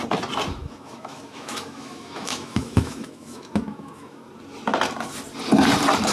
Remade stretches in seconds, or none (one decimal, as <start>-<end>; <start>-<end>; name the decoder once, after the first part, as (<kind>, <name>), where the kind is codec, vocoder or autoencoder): 0.6-4.3 (autoencoder, DAC-VAE)

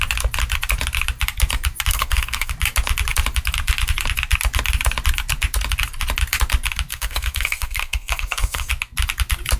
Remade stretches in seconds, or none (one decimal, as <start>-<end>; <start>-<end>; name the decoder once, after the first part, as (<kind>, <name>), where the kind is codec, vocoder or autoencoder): 1.9-2.5 (codec, SNAC); 6.9-8.7

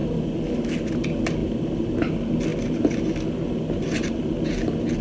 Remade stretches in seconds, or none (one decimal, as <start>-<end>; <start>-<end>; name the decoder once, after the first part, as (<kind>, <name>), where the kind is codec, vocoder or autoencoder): none

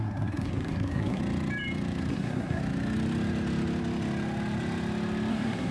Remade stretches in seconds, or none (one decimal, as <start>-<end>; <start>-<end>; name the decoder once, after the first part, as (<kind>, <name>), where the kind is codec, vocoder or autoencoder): 0.0-1.2 (codec, SNAC); 2.1-2.6; 5.3-5.7

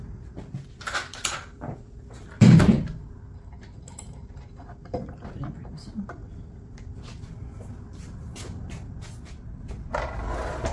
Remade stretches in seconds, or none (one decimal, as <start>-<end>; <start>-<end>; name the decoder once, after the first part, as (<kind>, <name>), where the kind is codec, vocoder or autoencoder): none

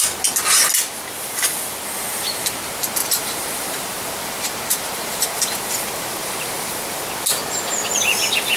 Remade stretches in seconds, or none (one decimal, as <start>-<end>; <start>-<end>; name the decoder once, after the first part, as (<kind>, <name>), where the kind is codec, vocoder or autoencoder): 3.0-7.1 (vocoder, BigVGAN v2)